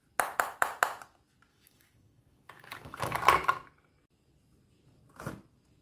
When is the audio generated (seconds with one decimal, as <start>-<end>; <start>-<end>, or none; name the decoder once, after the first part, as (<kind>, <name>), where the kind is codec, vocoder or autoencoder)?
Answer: 1.5-3.2 (codec, DAC)